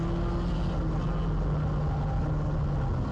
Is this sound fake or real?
real